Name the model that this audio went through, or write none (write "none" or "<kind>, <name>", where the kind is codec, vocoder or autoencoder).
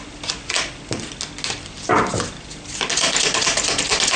none